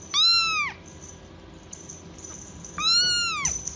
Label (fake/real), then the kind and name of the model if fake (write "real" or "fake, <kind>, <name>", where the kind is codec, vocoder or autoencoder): real